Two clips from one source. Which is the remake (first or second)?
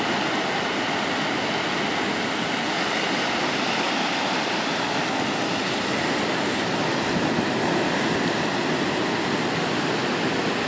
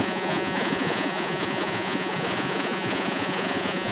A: second